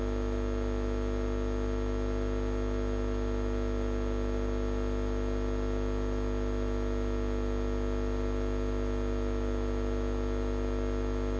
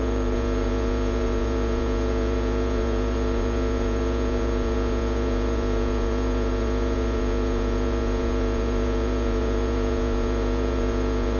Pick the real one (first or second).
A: first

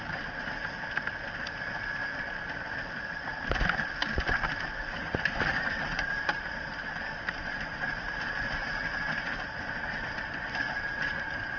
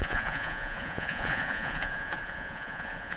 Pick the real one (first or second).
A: first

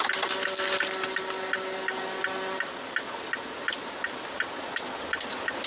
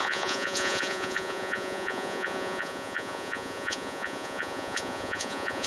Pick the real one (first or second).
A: first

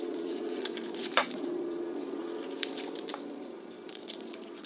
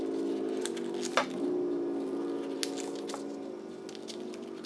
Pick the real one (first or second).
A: second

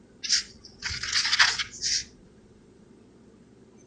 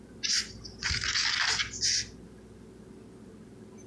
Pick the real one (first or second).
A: second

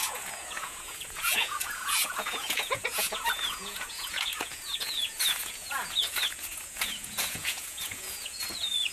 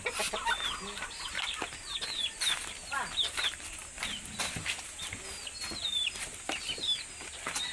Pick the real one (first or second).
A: second